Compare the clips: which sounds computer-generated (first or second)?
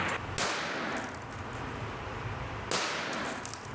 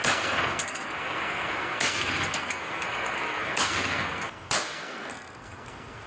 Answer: second